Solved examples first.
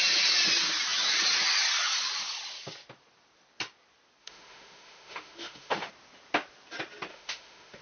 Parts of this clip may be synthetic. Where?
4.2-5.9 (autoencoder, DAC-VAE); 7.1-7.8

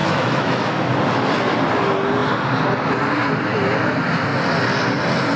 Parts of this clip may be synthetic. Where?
0.0-0.8 (autoencoder, DAC-VAE)